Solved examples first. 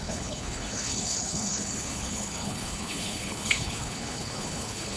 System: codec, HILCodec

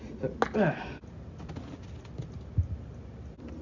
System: none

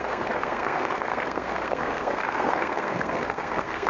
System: codec, SNAC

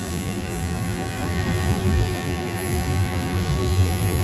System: vocoder, BigVGAN v2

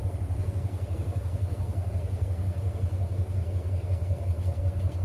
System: codec, SNAC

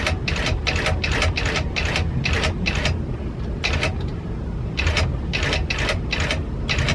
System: none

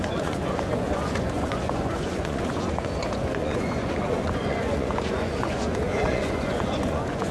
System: vocoder, Vocos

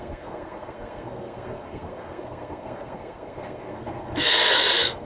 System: codec, SNAC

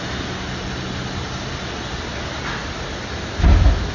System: none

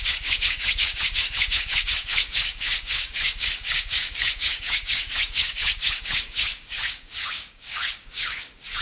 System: codec, DAC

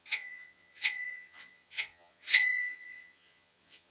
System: vocoder, Vocos